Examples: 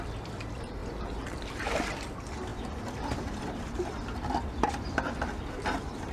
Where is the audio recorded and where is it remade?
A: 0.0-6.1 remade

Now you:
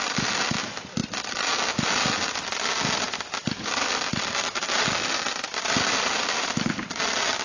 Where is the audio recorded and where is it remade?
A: 0.0-7.4 recorded

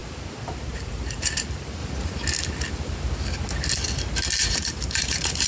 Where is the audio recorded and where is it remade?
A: 0.0-0.6 recorded; 0.6-1.8 remade; 1.8-4.4 recorded; 4.4-5.5 remade

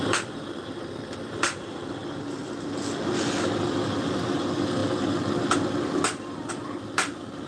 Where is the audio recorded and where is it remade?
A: 0.0-7.5 recorded